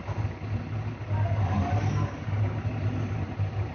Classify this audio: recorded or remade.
recorded